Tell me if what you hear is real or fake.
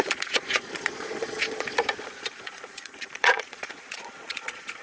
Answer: fake